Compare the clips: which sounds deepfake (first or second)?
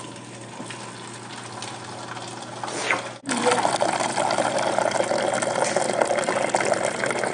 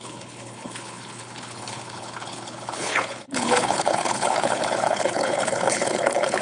second